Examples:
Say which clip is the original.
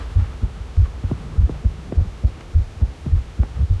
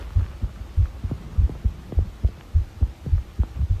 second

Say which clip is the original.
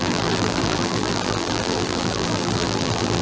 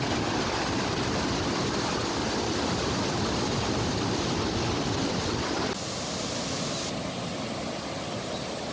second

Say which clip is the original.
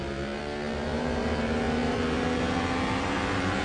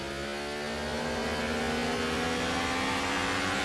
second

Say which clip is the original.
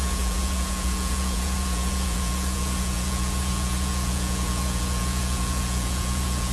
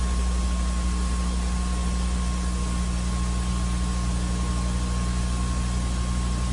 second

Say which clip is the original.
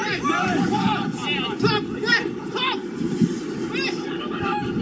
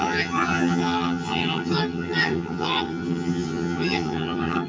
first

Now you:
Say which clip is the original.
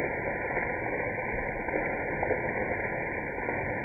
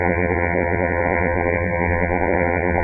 first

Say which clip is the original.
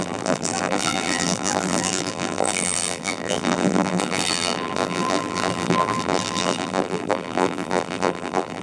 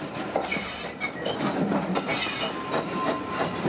second